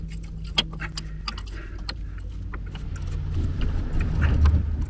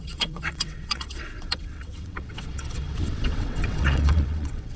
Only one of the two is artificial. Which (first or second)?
second